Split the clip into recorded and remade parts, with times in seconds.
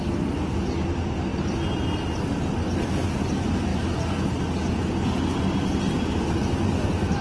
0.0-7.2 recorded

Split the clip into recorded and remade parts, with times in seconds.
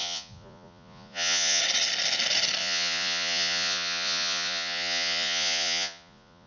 0.0-1.6 remade; 1.6-2.6 recorded; 2.6-6.5 remade